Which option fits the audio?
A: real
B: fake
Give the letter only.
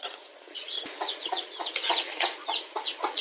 B